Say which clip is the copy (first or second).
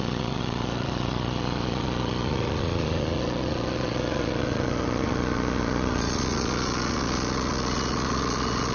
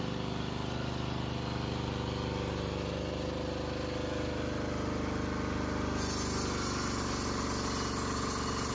first